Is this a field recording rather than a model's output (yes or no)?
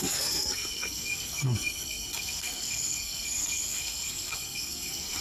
no